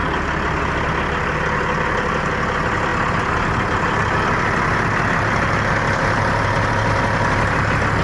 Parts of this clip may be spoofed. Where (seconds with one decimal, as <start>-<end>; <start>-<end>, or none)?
none

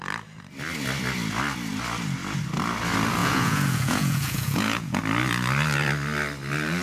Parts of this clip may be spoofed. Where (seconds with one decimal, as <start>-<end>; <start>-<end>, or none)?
3.2-5.0

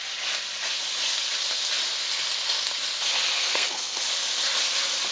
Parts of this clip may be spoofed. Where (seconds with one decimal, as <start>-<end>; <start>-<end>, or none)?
3.4-4.0